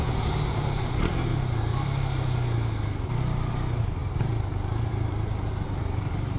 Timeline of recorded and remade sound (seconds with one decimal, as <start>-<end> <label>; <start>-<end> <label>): 0.0-1.3 remade; 1.3-3.2 recorded; 3.2-6.4 remade